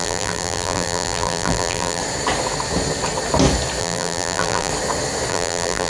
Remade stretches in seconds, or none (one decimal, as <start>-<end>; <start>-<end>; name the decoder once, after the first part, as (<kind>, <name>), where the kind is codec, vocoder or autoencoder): 0.0-2.0 (vocoder, BigVGAN v2); 3.8-4.7; 5.3-5.9

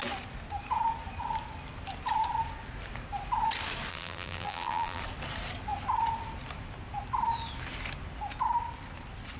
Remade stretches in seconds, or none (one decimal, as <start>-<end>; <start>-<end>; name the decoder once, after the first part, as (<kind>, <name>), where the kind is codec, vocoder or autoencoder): 3.9-5.0 (vocoder, BigVGAN v2)

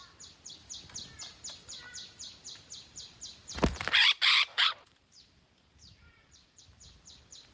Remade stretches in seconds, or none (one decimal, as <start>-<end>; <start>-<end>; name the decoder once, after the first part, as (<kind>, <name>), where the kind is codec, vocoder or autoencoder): 4.5-6.6 (vocoder, BigVGAN v2)

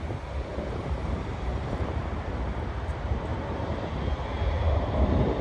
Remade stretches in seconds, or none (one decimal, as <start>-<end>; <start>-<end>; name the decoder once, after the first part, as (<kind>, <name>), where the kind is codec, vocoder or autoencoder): 0.5-2.0 (vocoder, BigVGAN v2); 3.3-3.9

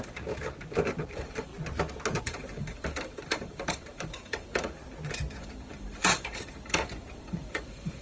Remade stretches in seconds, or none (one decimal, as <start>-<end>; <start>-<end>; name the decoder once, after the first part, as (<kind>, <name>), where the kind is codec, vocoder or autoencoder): 0.0-1.5 (vocoder, BigVGAN v2); 2.2-4.8; 5.4-8.0

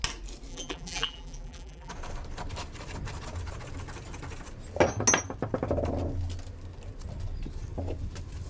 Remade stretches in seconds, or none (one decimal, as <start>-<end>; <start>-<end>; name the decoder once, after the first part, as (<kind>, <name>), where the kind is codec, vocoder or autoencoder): 0.5-1.9 (vocoder, BigVGAN v2)

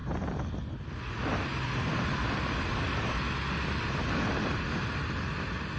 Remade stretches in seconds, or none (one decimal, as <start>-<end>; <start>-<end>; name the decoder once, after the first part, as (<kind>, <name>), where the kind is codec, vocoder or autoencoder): 0.0-3.3 (vocoder, BigVGAN v2)

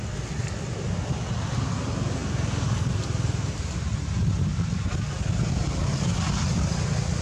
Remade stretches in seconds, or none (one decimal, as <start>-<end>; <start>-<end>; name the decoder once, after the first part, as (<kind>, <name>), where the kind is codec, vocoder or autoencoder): none